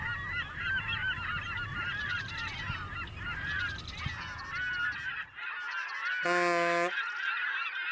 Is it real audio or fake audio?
real